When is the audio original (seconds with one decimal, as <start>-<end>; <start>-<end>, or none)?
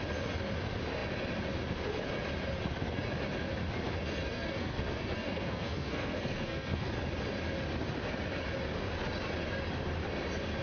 0.0-4.0; 6.9-10.6